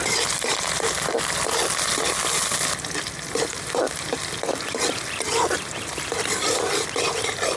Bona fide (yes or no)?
yes